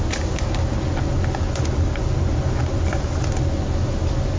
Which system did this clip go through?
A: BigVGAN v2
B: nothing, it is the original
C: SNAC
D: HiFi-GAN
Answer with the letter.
B